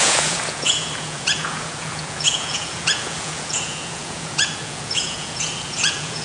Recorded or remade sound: remade